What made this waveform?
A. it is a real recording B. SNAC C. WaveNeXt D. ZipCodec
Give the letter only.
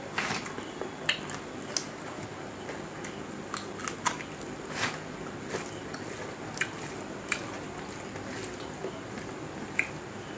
A